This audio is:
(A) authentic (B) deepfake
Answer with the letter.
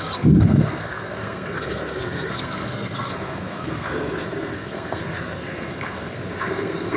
B